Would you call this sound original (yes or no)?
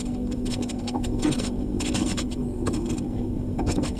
no